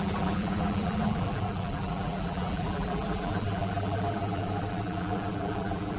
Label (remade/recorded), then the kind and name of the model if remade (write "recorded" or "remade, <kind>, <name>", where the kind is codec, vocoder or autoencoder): remade, vocoder, BigVGAN v2